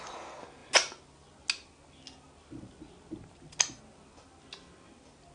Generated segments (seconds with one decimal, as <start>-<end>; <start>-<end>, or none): none